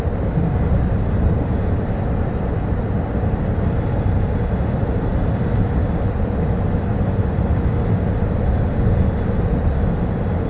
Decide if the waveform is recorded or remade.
recorded